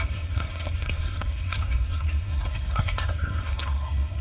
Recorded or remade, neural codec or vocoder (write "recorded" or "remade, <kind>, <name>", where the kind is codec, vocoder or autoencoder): remade, codec, SNAC